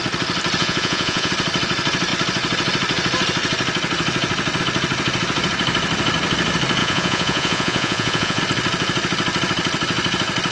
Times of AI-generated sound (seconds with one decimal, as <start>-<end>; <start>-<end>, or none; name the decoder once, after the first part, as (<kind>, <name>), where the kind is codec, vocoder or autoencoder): 0.6-1.3 (vocoder, Vocos); 6.8-8.4